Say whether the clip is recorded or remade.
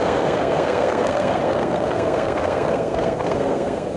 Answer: remade